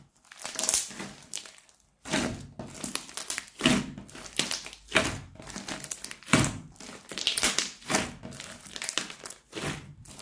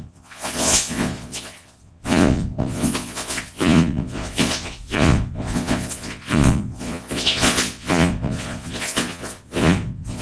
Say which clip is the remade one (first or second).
second